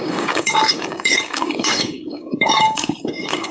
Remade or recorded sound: remade